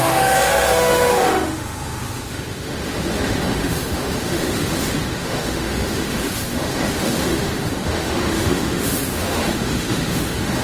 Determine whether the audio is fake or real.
fake